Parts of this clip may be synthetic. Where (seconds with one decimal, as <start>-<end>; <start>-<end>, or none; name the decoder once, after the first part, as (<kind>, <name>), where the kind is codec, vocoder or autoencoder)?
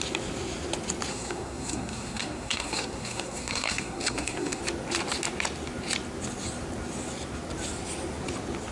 1.1-4.6 (codec, SNAC)